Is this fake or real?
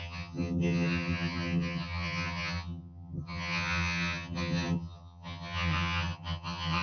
fake